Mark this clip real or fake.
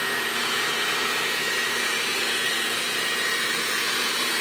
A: fake